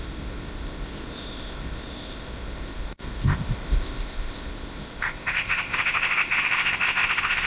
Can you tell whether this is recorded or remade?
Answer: remade